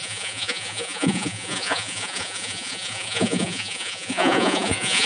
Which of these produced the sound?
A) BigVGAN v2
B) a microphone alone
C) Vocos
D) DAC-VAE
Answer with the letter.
C